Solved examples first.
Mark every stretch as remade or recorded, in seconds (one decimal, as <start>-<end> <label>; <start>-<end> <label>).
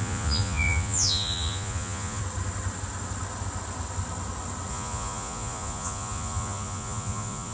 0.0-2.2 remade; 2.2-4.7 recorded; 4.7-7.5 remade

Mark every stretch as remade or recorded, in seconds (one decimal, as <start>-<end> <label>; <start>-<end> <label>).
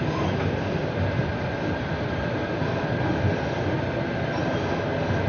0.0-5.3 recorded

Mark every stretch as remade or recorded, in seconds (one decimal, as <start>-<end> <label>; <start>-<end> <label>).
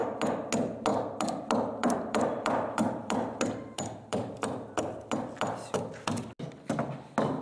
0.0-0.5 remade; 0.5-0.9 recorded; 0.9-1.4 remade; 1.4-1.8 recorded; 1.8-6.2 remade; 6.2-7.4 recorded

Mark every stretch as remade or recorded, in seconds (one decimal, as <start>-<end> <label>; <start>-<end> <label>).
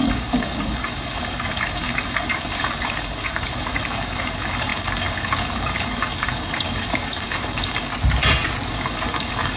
0.0-7.9 remade; 7.9-8.7 recorded; 8.7-9.6 remade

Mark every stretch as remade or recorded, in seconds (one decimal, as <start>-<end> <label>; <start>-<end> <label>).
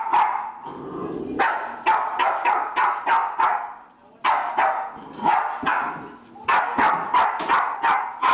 0.0-8.3 recorded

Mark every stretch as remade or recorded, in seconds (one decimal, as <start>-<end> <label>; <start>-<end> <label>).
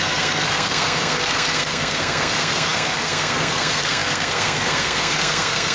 0.0-5.7 remade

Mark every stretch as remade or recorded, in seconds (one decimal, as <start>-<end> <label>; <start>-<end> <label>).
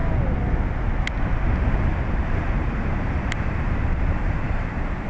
0.0-1.9 recorded; 1.9-5.1 remade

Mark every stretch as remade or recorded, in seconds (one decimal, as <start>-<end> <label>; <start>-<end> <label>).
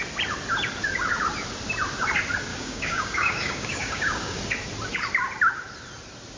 0.0-2.5 recorded; 2.5-4.4 remade; 4.4-6.4 recorded